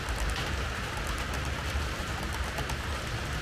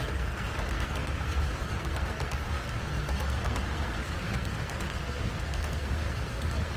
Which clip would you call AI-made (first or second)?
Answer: second